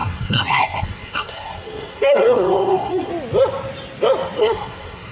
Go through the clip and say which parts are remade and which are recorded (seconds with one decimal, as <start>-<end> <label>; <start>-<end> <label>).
0.0-3.1 remade; 3.1-4.4 recorded; 4.4-5.1 remade